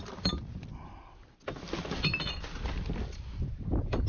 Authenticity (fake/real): real